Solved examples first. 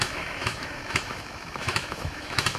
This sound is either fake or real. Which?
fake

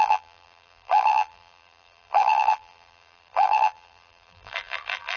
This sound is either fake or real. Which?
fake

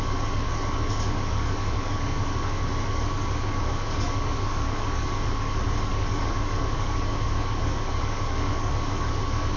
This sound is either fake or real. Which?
fake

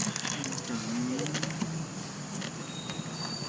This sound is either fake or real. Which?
real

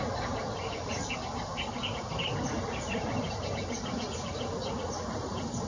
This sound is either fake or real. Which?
real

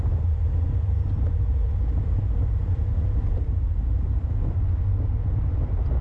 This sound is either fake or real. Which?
real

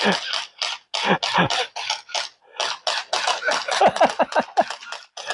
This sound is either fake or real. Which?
real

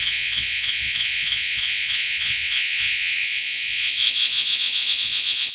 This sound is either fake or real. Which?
fake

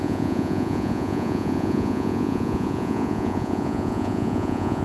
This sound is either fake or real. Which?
fake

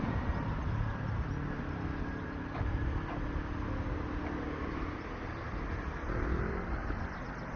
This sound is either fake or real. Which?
real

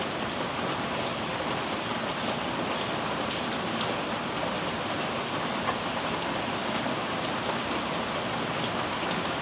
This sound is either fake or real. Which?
real